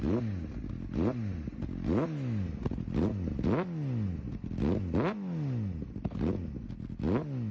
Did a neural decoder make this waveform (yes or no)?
no